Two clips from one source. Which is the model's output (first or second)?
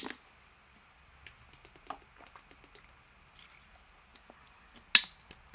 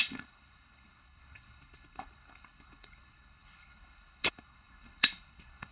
second